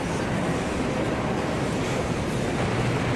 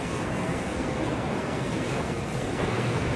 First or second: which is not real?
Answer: second